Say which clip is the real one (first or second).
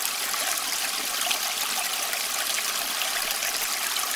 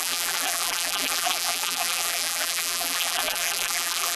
first